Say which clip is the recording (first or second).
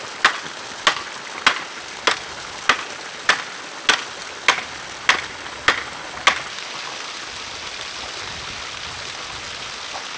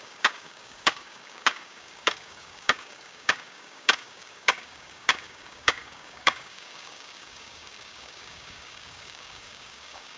first